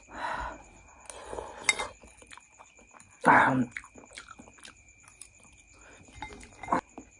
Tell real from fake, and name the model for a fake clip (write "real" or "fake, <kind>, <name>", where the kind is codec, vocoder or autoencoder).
real